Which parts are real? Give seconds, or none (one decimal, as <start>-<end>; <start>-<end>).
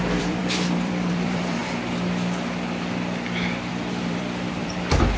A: 1.6-3.7